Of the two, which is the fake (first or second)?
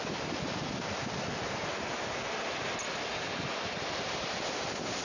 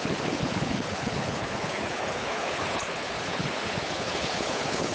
second